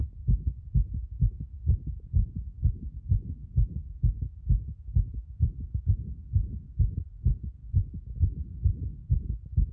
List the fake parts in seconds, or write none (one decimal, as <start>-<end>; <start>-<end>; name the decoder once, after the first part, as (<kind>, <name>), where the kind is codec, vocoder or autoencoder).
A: 2.2-6.8 (autoencoder, DAC-VAE)